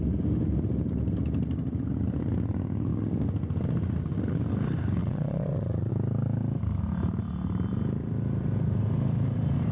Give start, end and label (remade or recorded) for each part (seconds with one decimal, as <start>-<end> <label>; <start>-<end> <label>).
0.0-5.0 recorded; 5.0-5.9 remade; 5.9-9.7 recorded